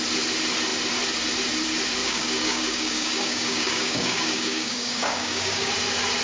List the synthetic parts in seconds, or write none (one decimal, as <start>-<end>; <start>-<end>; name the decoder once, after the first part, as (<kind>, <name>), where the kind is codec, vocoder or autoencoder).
2.0-5.7 (codec, DAC)